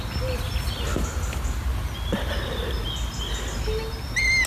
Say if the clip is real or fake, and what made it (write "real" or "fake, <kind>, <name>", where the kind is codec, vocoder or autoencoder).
real